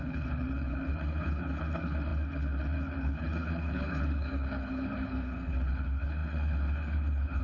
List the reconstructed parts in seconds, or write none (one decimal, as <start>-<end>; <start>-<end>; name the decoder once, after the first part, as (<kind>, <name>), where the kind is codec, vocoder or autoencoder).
0.0-7.4 (codec, HILCodec)